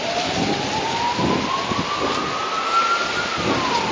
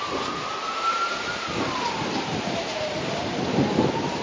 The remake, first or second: second